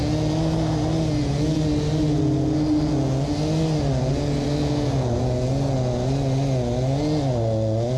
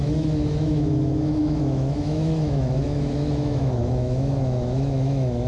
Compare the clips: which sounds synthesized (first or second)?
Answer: second